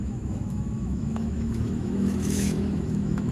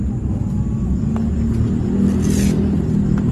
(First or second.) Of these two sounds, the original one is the second